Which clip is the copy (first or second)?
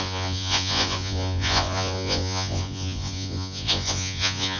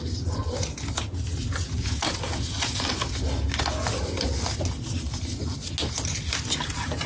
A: first